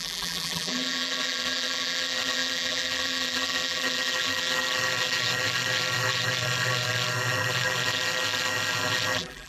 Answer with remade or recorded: remade